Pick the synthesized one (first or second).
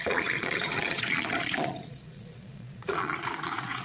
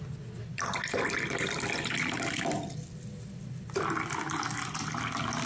first